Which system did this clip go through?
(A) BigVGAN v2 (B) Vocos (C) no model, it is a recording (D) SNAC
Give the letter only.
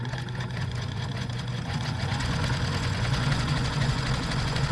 B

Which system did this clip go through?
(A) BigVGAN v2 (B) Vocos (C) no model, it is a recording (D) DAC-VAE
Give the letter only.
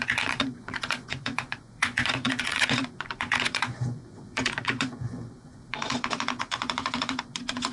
B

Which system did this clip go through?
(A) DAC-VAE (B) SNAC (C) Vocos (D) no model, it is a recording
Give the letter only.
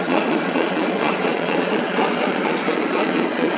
C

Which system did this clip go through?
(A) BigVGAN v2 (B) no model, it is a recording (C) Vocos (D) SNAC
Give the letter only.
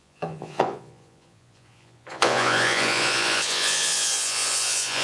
C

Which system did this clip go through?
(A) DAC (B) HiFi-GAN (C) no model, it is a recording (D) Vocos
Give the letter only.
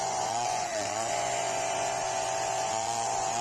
D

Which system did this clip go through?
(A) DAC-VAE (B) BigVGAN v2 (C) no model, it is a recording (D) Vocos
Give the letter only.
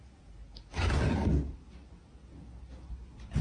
C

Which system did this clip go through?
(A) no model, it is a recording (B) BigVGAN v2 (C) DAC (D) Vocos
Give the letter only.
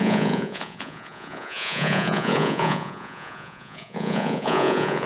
D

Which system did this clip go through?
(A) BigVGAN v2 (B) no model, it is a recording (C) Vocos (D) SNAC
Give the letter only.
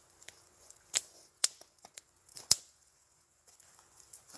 C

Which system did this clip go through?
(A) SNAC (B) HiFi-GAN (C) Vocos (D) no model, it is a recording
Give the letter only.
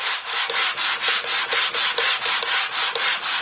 D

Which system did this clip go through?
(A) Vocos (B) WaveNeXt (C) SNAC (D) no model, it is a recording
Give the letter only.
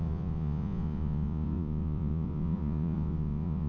A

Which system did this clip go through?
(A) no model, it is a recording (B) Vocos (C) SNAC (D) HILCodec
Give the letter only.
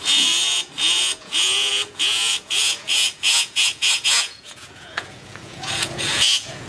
B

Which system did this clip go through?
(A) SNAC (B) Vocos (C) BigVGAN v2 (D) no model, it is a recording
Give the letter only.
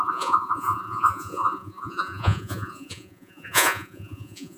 B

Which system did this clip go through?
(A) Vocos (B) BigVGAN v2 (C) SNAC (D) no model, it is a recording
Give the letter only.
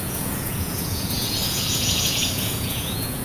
A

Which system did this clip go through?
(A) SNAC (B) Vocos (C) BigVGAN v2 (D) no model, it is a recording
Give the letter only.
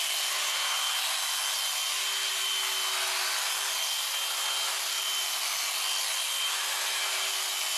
D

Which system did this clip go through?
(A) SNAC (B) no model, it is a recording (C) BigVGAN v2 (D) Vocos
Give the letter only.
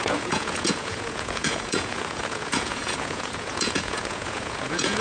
D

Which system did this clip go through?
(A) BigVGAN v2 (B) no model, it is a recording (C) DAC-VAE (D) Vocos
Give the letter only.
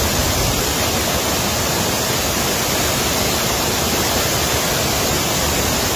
B